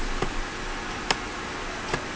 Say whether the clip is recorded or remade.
recorded